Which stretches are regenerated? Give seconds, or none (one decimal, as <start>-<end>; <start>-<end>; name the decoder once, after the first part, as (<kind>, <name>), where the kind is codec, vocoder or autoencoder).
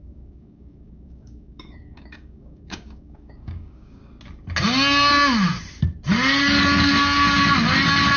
0.0-4.0 (codec, DAC)